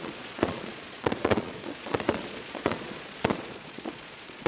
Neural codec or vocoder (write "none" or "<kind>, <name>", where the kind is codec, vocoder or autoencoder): vocoder, Vocos